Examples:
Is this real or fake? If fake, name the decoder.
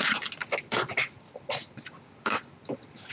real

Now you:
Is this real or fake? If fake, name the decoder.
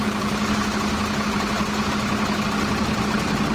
real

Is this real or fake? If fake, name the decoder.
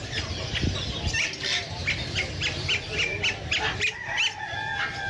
real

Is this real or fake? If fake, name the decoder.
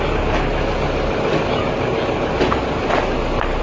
real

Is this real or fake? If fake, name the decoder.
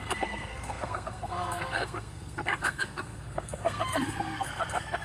fake, codec, SNAC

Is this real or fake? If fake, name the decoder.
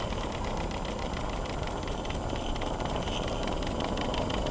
real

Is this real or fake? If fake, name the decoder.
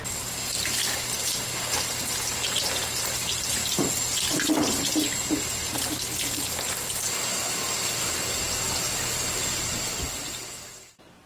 real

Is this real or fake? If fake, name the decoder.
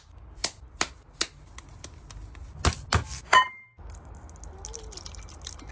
real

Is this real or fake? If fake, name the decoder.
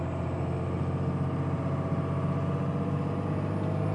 real